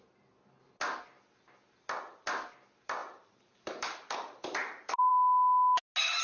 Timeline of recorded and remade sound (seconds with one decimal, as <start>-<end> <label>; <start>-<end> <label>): 0.0-3.0 recorded; 3.0-5.1 remade; 5.1-6.2 recorded